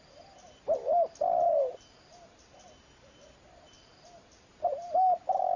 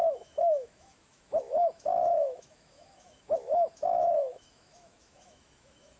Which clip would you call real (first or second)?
first